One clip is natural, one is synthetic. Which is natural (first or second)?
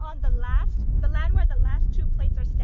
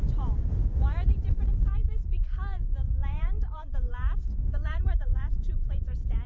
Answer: first